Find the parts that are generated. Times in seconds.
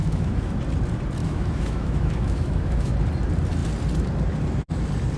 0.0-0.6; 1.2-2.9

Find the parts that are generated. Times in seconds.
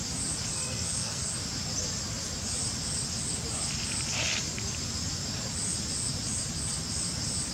0.5-1.3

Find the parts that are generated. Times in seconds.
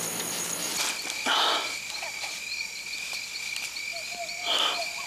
none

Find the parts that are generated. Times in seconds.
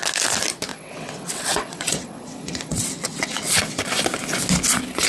0.7-3.8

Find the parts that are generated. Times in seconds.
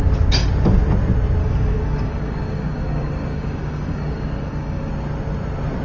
1.4-4.9